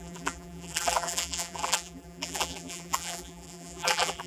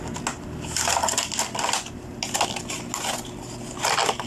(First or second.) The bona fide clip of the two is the second